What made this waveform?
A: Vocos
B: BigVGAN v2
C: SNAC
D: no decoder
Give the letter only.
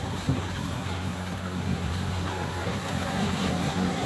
C